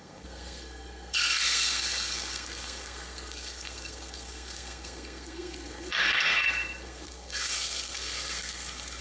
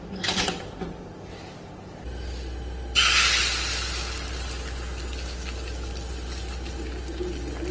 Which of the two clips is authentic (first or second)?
second